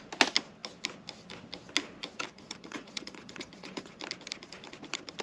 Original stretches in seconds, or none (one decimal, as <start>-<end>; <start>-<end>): 0.0-2.3; 4.0-5.2